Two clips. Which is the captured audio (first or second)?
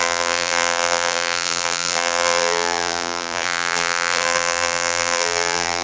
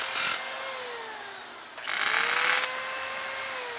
second